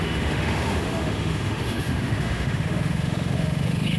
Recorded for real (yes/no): no